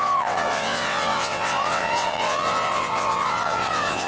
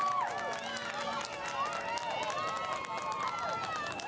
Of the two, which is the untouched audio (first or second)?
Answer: second